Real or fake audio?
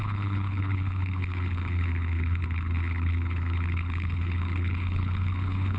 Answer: fake